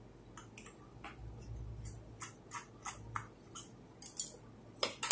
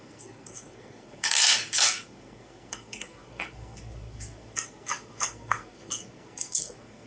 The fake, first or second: second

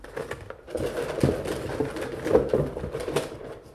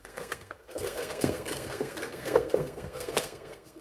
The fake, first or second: second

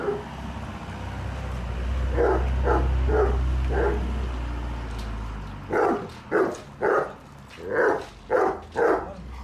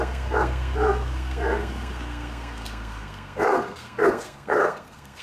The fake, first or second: second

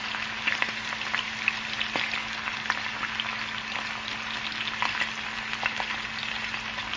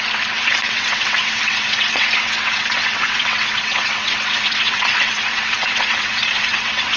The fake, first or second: second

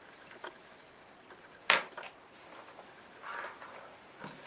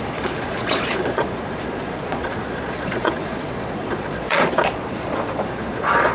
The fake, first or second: second